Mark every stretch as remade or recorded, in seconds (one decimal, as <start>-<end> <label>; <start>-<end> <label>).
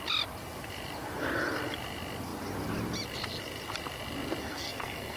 0.0-4.4 recorded; 4.4-5.2 remade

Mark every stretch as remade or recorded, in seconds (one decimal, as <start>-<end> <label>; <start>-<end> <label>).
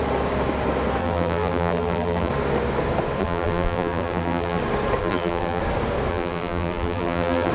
0.0-1.0 recorded; 1.0-2.3 remade; 2.3-3.2 recorded; 3.2-4.6 remade; 4.6-5.0 recorded; 5.0-5.6 remade; 5.6-6.1 recorded; 6.1-7.5 remade